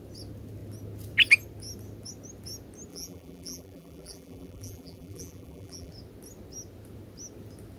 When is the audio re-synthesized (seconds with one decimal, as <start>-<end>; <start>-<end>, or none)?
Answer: 2.9-5.9